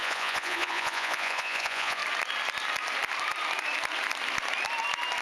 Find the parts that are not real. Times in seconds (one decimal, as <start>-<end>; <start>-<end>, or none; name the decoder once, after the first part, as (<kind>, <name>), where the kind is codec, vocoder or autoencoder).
0.0-2.0 (vocoder, Vocos)